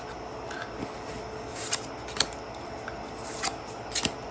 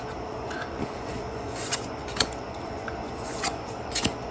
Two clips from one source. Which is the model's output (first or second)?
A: second